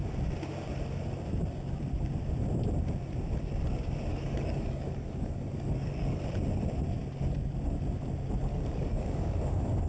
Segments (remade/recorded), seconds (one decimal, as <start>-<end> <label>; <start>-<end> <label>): 0.0-4.1 recorded; 4.1-6.2 remade; 6.2-8.5 recorded; 8.5-9.9 remade